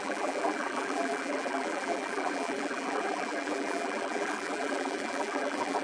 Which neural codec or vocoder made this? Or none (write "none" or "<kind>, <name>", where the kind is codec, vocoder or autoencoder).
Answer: vocoder, BigVGAN v2